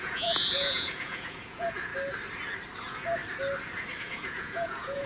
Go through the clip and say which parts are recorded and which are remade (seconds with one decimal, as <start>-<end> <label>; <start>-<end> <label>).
0.0-1.9 remade; 1.9-2.8 recorded; 2.8-3.2 remade; 3.2-4.0 recorded; 4.0-5.1 remade